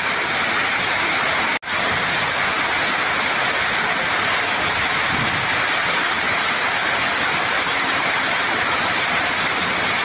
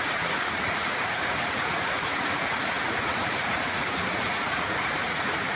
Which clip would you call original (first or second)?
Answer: first